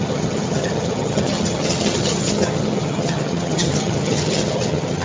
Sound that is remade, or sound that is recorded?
remade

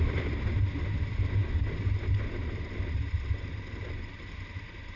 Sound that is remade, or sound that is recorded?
recorded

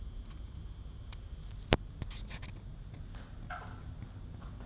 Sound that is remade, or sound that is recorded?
recorded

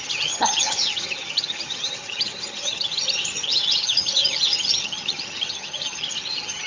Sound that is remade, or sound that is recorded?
remade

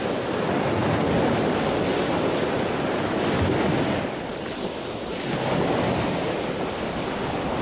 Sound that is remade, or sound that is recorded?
recorded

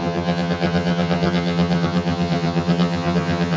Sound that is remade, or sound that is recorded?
remade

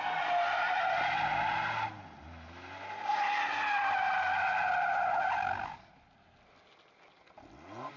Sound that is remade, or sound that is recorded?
recorded